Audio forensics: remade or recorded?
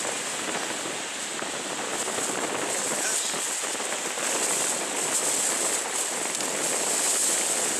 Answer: recorded